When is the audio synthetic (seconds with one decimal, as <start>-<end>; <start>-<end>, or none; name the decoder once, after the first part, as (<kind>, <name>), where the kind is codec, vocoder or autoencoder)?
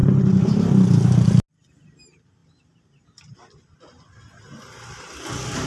none